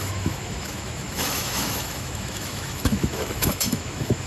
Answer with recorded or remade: remade